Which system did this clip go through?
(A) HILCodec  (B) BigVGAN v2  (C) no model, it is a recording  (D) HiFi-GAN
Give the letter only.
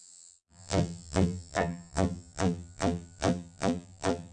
B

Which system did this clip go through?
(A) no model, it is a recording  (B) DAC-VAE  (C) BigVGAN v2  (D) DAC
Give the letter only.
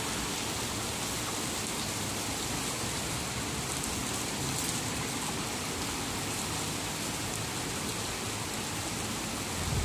A